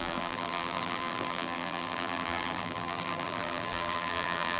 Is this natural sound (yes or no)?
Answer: no